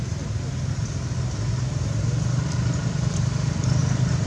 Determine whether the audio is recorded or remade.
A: recorded